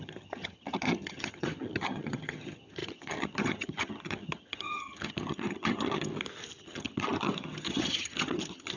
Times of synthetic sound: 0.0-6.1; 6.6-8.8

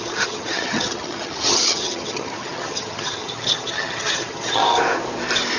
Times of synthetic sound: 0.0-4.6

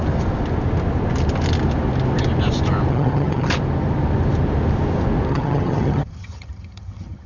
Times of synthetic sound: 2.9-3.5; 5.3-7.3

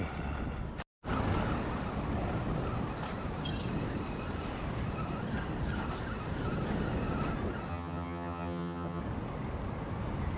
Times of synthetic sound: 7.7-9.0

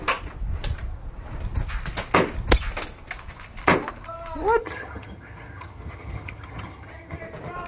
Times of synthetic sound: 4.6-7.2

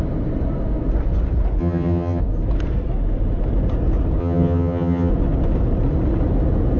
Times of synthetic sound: 1.6-2.2; 4.2-5.1

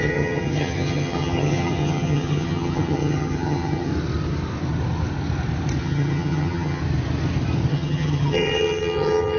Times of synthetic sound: 0.0-3.9; 5.8-6.8; 7.7-9.4

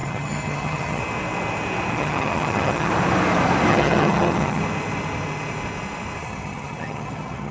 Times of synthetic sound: 0.0-1.0; 1.9-2.9; 3.7-4.6; 6.2-7.5